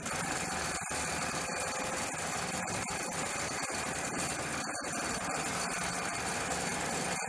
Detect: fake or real real